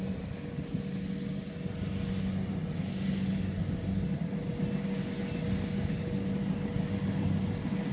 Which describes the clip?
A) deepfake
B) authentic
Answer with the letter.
B